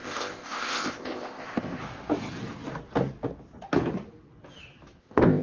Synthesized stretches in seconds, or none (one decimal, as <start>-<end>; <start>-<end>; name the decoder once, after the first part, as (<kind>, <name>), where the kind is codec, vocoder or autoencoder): 0.0-1.8 (codec, ZipCodec); 5.0-5.4